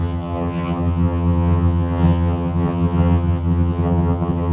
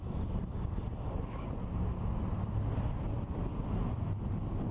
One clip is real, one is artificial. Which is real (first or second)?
second